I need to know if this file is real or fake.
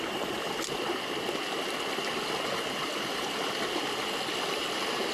real